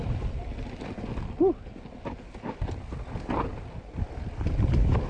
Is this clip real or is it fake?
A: real